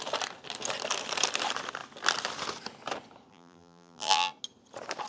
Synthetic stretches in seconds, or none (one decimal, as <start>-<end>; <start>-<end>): 3.3-4.3